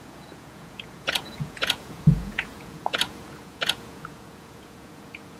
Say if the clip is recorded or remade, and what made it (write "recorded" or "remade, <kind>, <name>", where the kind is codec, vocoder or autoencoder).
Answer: remade, vocoder, Vocos